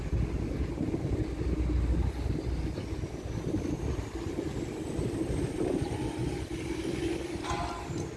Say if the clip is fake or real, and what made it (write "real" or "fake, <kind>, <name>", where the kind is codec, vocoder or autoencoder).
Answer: real